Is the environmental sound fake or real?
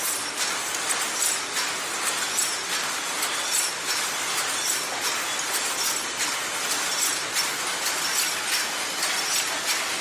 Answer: real